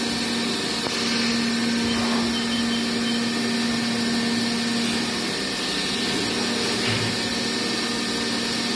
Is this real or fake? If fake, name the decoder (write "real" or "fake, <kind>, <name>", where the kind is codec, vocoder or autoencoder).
real